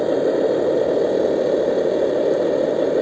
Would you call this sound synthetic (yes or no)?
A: no